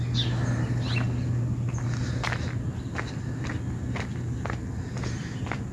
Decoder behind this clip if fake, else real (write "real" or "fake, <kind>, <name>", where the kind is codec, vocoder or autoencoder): real